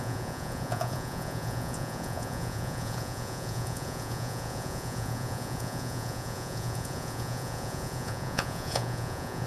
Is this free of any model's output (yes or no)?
no